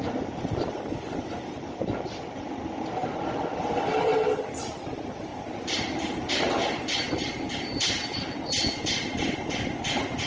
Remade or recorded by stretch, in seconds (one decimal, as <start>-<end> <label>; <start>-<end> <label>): 0.0-5.3 remade; 5.3-6.3 recorded; 6.3-10.3 remade